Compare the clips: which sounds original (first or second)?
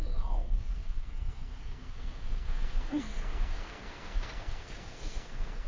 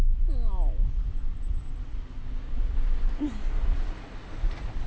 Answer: second